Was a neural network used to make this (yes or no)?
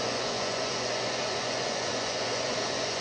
yes